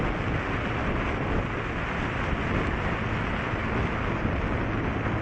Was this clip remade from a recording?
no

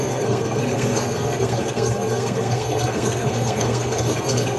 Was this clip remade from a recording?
yes